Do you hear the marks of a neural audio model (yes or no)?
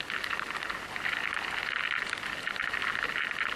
no